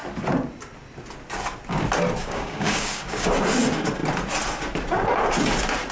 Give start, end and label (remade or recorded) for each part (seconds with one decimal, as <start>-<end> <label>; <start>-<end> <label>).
0.0-2.2 recorded; 2.2-3.3 remade; 3.3-5.9 recorded